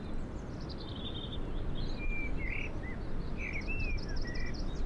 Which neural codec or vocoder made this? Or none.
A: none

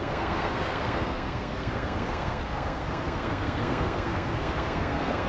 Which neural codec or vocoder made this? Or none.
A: codec, SNAC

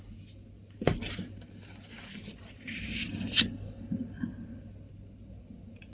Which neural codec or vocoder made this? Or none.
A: none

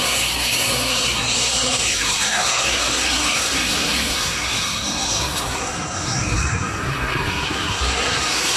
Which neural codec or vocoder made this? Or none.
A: codec, SNAC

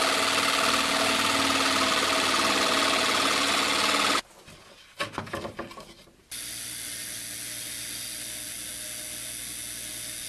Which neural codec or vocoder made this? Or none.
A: none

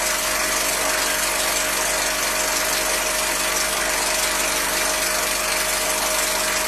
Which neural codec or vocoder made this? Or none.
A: none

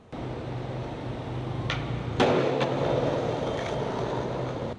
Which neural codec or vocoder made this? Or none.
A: none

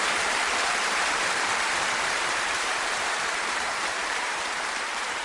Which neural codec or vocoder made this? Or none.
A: vocoder, BigVGAN v2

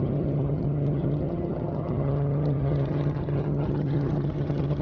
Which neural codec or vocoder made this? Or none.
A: vocoder, HiFi-GAN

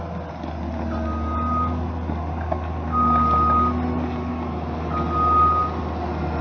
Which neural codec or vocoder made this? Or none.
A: none